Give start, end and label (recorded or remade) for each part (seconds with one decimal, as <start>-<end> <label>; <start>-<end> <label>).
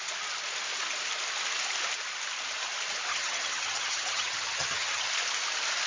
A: 0.0-3.1 recorded; 3.1-5.1 remade; 5.1-5.9 recorded